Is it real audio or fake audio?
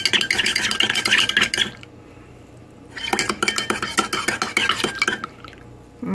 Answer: real